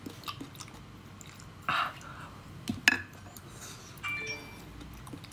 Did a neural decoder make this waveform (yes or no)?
no